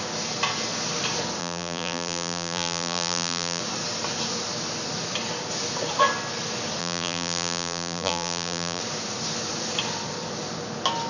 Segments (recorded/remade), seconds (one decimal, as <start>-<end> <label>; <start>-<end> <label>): 0.0-1.4 recorded; 1.4-3.6 remade; 3.6-6.8 recorded; 6.8-8.8 remade; 8.8-11.1 recorded